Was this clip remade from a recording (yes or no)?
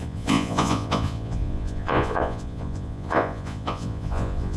yes